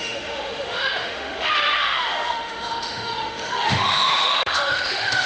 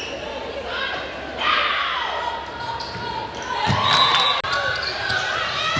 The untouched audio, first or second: second